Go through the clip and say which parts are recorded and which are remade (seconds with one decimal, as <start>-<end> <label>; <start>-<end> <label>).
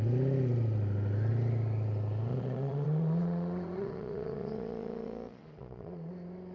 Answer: 0.0-2.3 recorded; 2.3-6.1 remade; 6.1-6.5 recorded